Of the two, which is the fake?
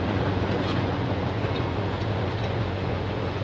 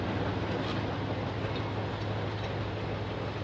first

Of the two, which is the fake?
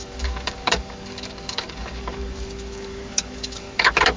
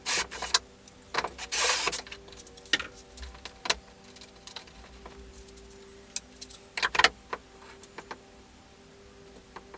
first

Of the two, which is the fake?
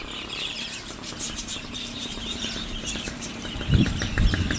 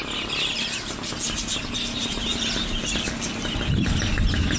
first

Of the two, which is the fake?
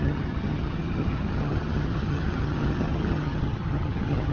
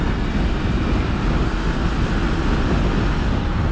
first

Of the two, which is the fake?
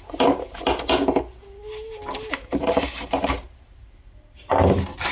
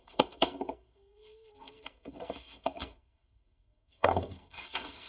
second